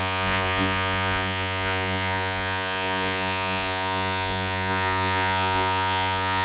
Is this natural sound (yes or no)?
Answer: no